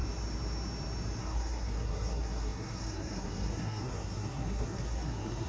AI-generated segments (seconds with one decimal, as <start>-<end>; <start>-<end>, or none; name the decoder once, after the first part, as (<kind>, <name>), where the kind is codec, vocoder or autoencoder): 1.2-5.5 (codec, SNAC)